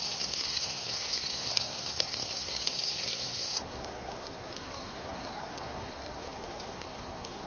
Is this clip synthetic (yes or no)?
yes